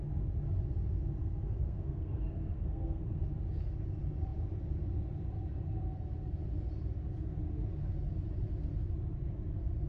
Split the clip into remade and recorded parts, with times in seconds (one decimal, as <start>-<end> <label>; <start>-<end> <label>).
0.0-1.2 recorded; 1.2-3.2 remade; 3.2-9.9 recorded